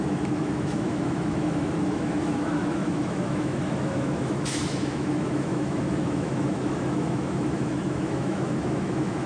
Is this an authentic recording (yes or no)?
no